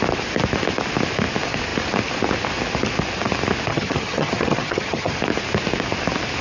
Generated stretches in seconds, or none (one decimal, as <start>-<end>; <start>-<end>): 3.7-5.1